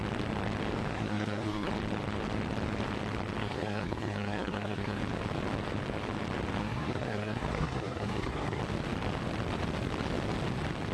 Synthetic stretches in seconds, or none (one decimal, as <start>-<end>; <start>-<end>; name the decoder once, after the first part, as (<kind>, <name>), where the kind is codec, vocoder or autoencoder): 0.9-1.7 (codec, SNAC); 3.4-5.0; 6.6-8.6